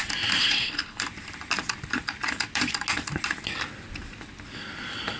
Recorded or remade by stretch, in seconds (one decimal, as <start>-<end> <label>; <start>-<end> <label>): 0.0-0.4 recorded; 0.4-1.0 remade; 1.0-5.2 recorded